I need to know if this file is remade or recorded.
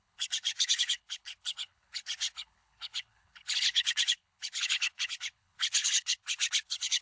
remade